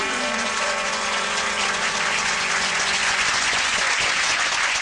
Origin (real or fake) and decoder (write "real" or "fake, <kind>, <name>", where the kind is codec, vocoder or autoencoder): fake, vocoder, Vocos